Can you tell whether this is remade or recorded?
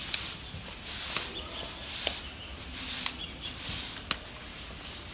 recorded